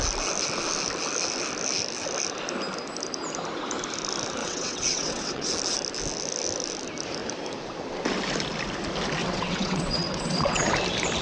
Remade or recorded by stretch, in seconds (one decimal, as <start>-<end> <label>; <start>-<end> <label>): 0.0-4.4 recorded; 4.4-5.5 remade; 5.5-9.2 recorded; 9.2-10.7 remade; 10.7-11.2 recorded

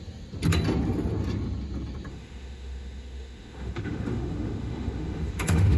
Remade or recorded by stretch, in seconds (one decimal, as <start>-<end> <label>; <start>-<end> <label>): 0.0-2.1 recorded; 2.1-5.8 remade

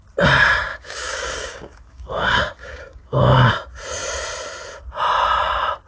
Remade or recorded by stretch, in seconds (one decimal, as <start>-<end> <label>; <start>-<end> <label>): 0.0-0.7 recorded; 0.7-3.5 remade; 3.5-5.9 recorded

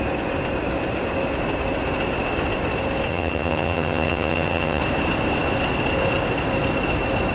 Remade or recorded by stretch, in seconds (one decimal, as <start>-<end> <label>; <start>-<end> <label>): 0.0-3.1 recorded; 3.1-4.8 remade; 4.8-7.3 recorded

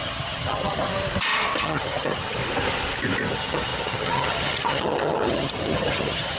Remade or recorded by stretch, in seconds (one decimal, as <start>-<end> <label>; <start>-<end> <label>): 0.0-0.9 remade; 0.9-1.6 recorded; 1.6-2.4 remade; 2.4-3.3 recorded; 3.3-6.4 remade

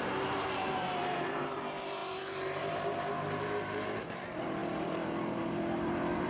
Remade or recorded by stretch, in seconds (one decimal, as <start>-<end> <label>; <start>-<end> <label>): 0.0-6.3 remade

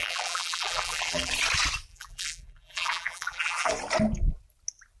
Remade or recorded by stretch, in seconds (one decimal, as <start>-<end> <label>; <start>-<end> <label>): 0.0-1.3 remade; 1.3-1.9 recorded; 1.9-3.7 remade; 3.7-5.0 recorded